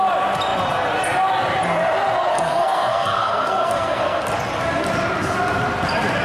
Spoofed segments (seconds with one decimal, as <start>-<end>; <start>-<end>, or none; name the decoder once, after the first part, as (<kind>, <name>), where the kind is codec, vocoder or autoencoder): 2.3-4.2 (codec, SNAC)